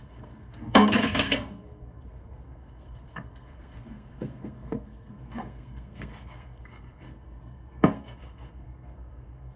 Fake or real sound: fake